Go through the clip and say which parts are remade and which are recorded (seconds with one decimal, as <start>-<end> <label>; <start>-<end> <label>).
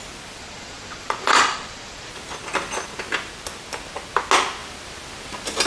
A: 0.0-0.4 recorded; 0.4-2.1 remade; 2.1-5.7 recorded